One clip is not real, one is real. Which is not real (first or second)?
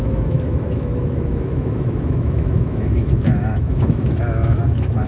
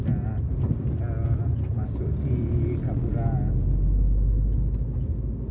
first